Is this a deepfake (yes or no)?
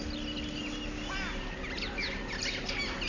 no